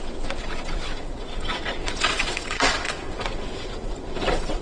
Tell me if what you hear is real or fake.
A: fake